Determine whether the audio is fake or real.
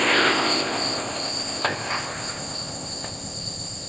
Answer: fake